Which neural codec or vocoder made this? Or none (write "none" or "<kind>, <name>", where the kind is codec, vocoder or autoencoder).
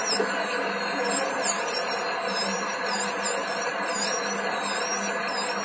none